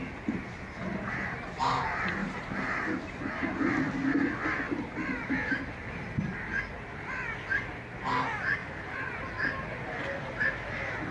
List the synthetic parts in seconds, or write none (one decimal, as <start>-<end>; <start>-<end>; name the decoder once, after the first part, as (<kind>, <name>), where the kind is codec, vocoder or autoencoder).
2.2-3.0 (vocoder, BigVGAN v2); 8.6-9.3